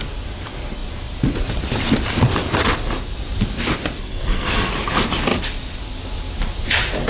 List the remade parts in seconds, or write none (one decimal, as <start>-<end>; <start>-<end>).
4.0-4.7